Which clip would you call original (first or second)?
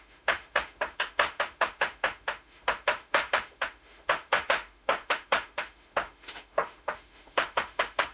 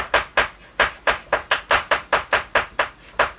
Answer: second